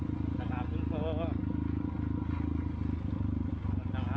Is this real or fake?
real